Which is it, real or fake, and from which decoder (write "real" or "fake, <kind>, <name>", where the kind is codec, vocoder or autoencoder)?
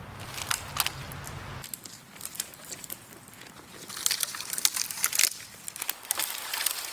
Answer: real